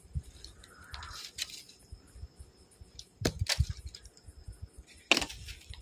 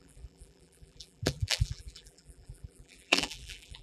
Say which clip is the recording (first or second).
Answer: first